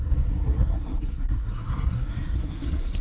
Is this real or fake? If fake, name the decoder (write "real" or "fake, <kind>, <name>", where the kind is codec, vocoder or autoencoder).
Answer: fake, codec, SNAC